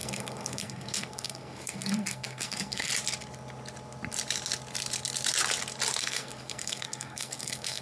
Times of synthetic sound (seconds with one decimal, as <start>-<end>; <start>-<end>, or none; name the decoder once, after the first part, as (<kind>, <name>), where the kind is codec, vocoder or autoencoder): 0.0-2.9 (codec, SNAC); 6.0-7.8